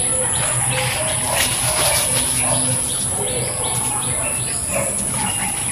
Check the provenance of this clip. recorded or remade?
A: recorded